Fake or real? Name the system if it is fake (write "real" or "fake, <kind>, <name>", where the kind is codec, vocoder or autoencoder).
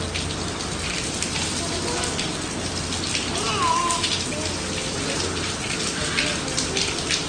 real